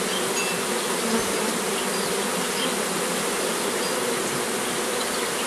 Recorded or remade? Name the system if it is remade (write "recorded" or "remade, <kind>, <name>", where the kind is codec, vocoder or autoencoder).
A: recorded